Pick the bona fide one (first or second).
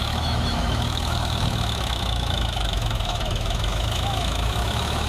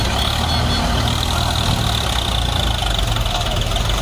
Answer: second